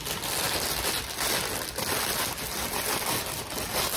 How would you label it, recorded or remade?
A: recorded